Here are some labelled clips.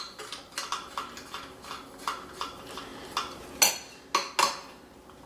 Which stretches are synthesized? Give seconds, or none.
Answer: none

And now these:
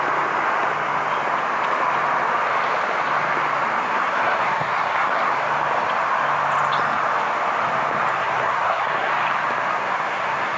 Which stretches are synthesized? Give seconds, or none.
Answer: 3.8-5.3 (codec, SNAC); 8.1-9.1; 9.7-10.6

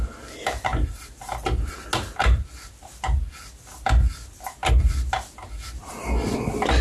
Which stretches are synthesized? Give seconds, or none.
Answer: none

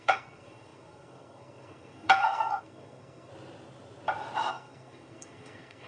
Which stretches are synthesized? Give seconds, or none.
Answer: 0.0-3.3 (codec, SNAC); 4.5-5.9